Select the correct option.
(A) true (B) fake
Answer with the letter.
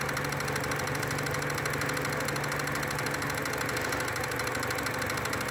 A